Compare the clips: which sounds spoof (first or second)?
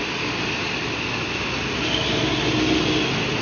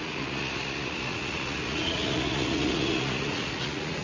second